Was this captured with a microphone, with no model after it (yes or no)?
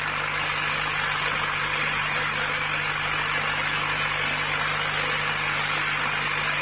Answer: yes